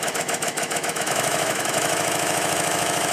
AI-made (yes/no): yes